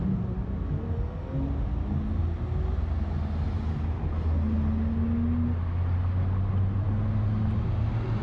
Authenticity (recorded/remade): recorded